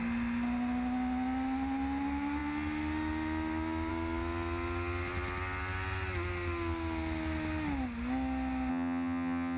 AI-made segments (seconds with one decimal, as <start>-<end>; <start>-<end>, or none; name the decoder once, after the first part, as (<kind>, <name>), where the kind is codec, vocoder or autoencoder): 8.7-9.6 (vocoder, HiFi-GAN)